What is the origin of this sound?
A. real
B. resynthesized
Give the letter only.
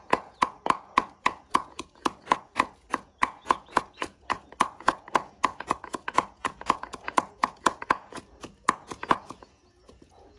B